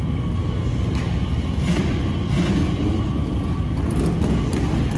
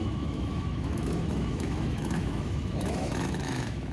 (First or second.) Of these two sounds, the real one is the first